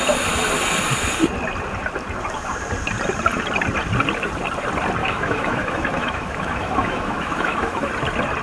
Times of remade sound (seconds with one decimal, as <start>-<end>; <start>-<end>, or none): 5.0-7.9